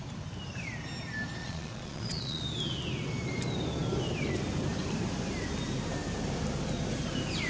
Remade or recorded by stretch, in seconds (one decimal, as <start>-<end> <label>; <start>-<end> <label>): 0.0-1.4 recorded; 1.4-2.4 remade; 2.4-7.5 recorded

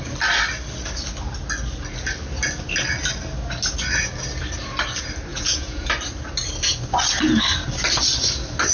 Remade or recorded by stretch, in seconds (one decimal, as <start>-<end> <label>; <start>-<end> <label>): 0.0-5.3 recorded; 5.3-5.9 remade; 5.9-8.7 recorded

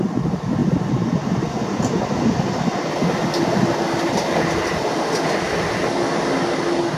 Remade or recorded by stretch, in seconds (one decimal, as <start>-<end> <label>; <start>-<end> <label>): 0.0-7.0 recorded

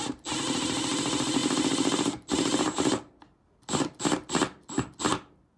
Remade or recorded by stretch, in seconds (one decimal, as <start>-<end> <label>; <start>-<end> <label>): 0.0-5.6 recorded